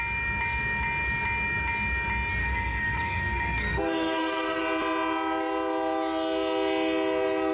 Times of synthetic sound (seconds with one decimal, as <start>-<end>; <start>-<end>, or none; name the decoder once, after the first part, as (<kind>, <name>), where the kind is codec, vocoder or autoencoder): 2.4-4.6 (codec, SNAC)